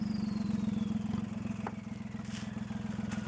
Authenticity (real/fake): real